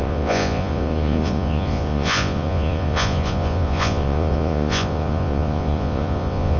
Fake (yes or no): yes